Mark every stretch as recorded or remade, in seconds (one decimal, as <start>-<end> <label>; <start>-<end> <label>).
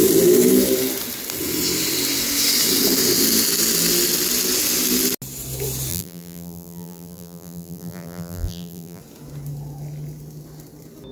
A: 0.0-5.9 recorded; 5.9-9.0 remade; 9.0-11.1 recorded